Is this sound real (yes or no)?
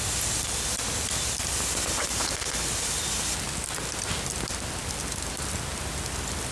yes